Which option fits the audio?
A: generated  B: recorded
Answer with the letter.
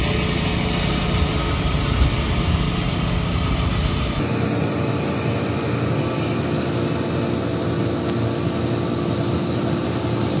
B